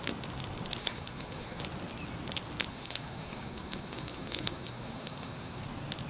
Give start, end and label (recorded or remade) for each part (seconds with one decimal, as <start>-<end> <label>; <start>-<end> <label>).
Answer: 0.0-0.8 recorded; 0.8-1.6 remade; 1.6-2.7 recorded; 2.7-5.6 remade; 5.6-6.1 recorded